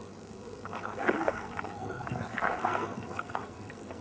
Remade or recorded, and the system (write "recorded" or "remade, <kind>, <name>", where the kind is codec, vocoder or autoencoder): remade, codec, SNAC